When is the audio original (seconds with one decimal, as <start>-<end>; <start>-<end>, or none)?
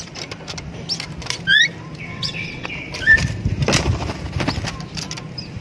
0.0-2.1; 2.7-5.6